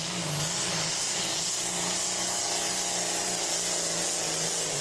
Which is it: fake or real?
real